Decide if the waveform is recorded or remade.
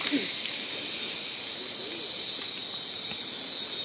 recorded